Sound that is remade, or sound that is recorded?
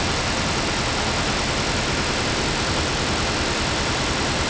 recorded